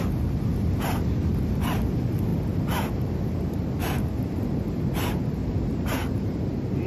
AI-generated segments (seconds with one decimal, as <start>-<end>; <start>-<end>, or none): 5.4-6.4

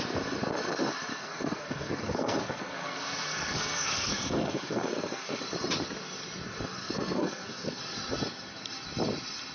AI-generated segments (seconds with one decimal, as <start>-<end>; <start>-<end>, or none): 1.1-5.4; 6.8-7.8

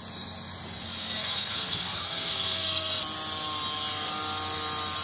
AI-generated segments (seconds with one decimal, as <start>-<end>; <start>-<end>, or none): 1.2-3.0

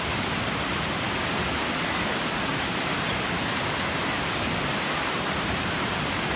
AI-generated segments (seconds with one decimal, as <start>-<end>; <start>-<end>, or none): 2.5-6.4

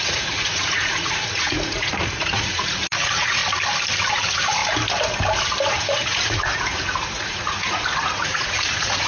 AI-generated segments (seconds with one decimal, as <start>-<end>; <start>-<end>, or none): 0.0-3.4; 4.1-4.6; 5.7-9.1

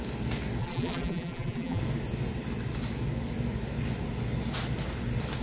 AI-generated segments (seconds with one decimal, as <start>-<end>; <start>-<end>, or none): 0.6-1.8

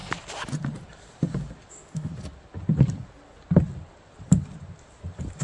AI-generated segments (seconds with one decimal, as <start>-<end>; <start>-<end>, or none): 1.7-2.1

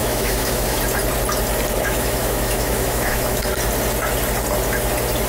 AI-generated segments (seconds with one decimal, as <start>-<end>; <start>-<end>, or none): 0.0-0.8; 1.7-3.5